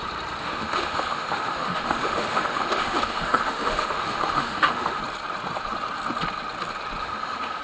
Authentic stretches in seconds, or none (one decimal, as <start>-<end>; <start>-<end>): 0.0-0.4; 5.0-7.0